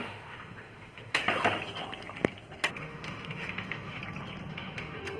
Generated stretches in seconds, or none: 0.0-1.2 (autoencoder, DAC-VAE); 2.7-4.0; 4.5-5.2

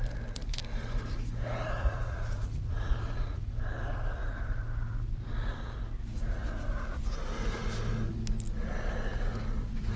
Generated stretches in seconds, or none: 1.8-3.5 (vocoder, Vocos)

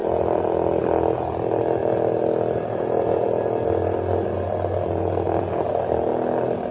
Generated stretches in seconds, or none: none

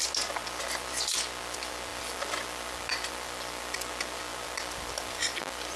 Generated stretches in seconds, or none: 1.9-3.9 (vocoder, BigVGAN v2); 4.3-5.8

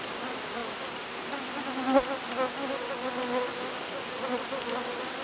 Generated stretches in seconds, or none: none

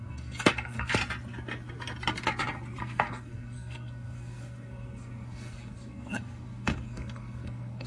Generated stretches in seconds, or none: 0.0-1.0 (codec, SNAC); 2.8-7.9

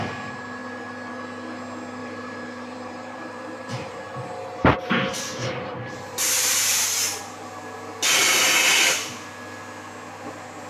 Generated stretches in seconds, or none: 2.0-4.0 (vocoder, BigVGAN v2); 5.4-7.2

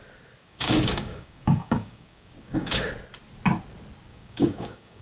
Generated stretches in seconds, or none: 0.4-2.9 (codec, DAC); 4.1-5.0